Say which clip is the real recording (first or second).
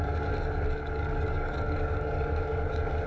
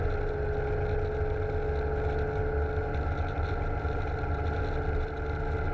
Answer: second